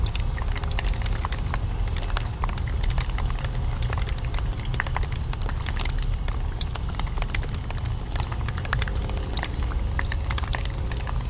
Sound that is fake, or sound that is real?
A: real